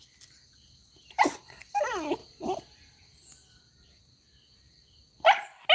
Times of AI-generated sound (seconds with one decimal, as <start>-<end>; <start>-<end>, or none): none

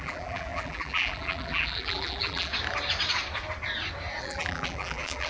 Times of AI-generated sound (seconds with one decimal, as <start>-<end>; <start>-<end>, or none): 0.0-2.5; 4.2-5.3

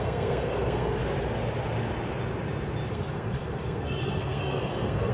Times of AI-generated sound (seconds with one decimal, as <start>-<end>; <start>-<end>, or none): 0.0-1.0; 2.9-5.1

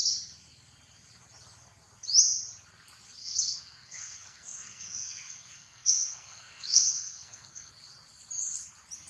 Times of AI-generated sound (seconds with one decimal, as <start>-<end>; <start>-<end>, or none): 3.2-7.7

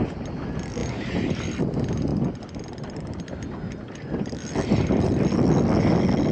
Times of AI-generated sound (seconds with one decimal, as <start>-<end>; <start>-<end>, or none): none

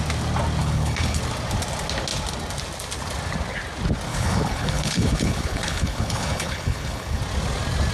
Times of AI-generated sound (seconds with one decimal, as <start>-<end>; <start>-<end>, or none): 0.6-1.2; 4.1-7.2

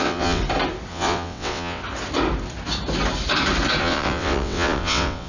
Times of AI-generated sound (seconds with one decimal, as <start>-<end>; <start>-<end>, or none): 0.0-0.4; 0.9-1.8; 3.8-5.3